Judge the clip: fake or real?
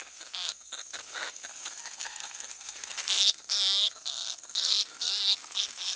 fake